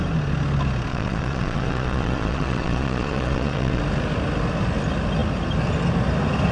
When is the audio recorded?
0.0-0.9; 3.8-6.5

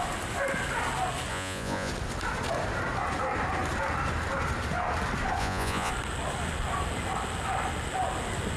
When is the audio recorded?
0.0-1.3; 1.9-5.4; 5.9-8.6

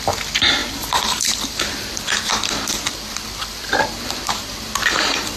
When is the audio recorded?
0.0-0.6; 3.8-4.4

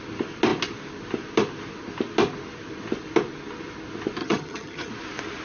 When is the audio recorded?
0.0-4.2; 4.9-5.4

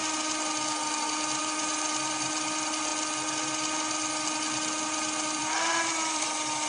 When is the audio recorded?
0.0-1.4; 2.9-5.4